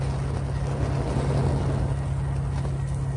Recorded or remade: recorded